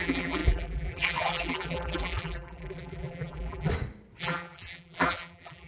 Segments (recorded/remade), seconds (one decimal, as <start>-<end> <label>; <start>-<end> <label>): 0.0-3.7 remade; 3.7-4.2 recorded; 4.2-5.7 remade